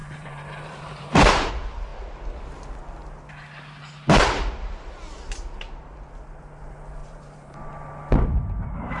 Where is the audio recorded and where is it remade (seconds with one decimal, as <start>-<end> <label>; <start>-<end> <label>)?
0.0-1.5 remade; 1.5-7.0 recorded; 7.0-7.7 remade; 7.7-9.0 recorded